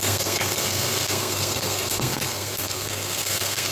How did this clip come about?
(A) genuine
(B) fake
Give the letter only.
B